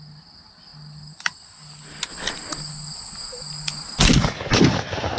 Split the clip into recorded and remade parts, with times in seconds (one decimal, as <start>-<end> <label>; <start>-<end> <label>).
0.0-5.2 recorded